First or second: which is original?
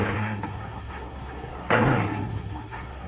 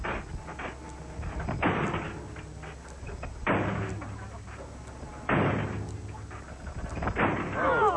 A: second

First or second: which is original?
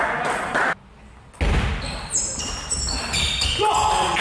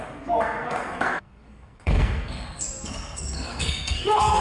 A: first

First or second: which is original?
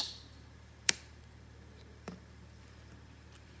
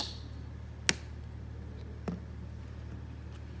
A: second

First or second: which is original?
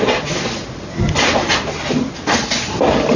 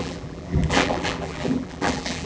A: first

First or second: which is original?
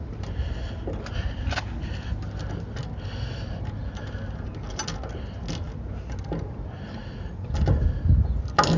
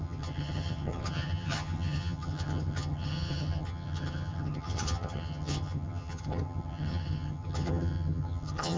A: first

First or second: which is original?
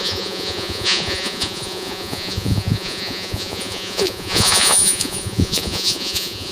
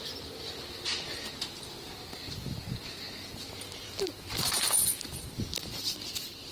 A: second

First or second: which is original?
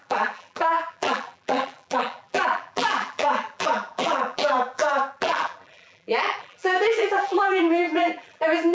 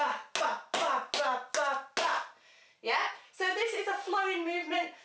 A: second